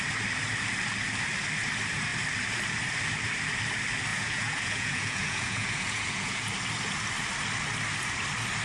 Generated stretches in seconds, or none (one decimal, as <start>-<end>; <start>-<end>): 4.1-6.5